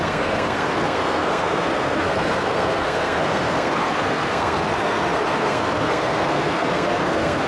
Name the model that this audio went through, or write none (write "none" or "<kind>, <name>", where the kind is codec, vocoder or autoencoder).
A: codec, SNAC